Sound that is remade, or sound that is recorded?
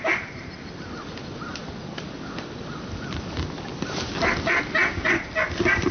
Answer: recorded